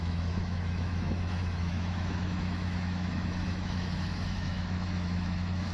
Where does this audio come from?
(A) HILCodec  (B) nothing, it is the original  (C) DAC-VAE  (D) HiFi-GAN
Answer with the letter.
C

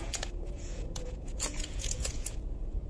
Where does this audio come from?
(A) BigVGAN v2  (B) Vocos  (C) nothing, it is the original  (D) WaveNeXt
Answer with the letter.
B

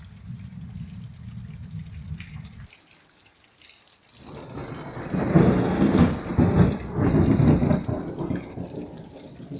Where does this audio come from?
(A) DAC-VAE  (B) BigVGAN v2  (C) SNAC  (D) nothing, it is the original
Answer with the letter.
D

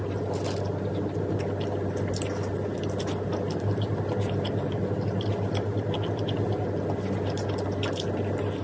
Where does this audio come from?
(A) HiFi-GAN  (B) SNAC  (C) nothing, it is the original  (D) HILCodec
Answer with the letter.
C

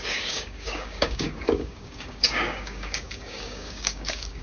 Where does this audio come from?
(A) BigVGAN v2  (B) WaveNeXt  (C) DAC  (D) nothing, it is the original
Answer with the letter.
C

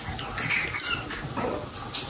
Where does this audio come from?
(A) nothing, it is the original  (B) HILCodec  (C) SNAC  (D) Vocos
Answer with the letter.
A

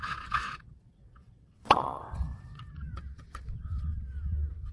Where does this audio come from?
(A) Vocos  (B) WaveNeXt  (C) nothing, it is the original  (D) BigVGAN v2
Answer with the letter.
B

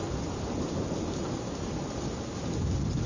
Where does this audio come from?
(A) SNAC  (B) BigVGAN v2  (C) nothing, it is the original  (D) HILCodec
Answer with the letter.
C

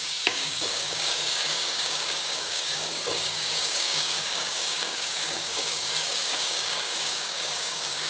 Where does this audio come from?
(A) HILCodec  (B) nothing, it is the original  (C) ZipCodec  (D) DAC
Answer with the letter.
D